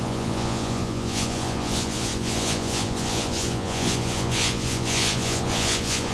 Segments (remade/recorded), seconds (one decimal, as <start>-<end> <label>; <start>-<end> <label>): 0.0-6.1 remade